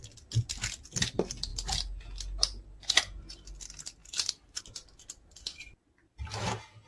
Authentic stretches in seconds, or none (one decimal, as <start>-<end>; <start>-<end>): 0.0-4.0; 4.6-6.9